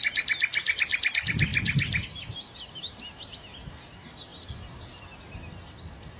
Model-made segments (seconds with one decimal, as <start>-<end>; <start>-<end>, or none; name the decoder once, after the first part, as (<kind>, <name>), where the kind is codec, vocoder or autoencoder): 1.5-3.2 (vocoder, BigVGAN v2); 4.3-5.0